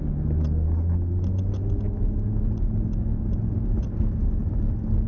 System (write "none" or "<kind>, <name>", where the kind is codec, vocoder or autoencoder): none